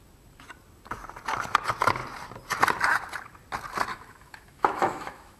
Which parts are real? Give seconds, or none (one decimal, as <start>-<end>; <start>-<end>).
0.0-3.9